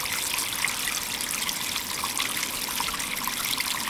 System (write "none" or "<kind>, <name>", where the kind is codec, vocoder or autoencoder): none